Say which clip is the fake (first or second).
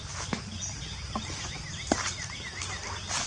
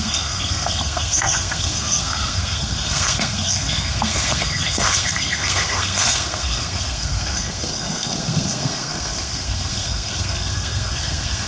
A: second